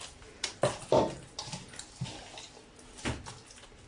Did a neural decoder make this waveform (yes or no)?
no